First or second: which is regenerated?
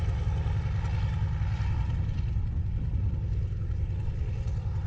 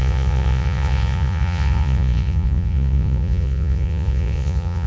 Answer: second